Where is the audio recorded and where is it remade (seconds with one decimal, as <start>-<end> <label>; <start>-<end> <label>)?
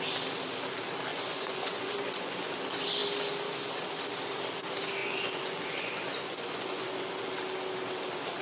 0.0-1.1 recorded; 1.1-2.5 remade; 2.5-5.0 recorded; 5.0-7.3 remade; 7.3-8.4 recorded